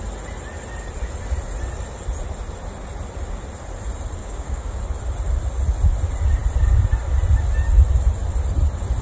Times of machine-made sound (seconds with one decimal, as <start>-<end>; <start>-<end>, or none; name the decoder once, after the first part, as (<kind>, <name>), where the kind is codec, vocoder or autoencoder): 4.2-4.8 (codec, DAC)